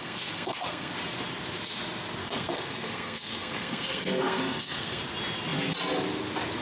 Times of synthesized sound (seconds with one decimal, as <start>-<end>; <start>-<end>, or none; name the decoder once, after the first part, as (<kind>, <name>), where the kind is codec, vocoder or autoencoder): 0.0-0.9 (codec, SNAC); 2.2-5.0